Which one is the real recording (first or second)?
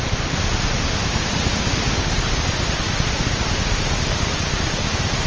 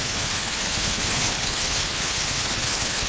first